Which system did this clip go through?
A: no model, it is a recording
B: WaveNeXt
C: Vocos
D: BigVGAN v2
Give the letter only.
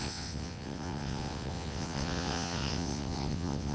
B